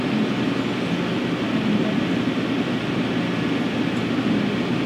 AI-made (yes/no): no